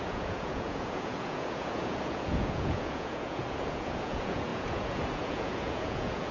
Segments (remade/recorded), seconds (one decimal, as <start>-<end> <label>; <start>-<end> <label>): 0.0-6.3 remade